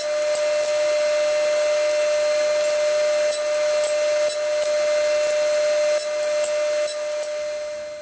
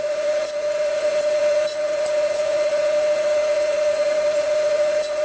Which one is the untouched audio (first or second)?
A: first